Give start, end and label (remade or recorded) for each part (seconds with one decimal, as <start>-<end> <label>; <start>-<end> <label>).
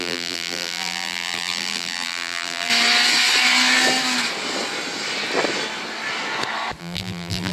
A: 0.0-2.7 remade; 2.7-6.8 recorded; 6.8-7.5 remade